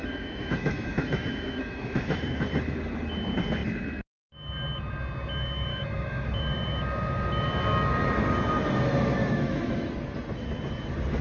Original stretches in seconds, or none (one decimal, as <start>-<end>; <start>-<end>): 2.4-5.7; 6.4-9.2; 9.9-11.2